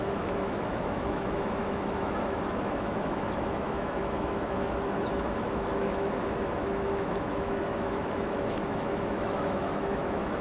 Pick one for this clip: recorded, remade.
remade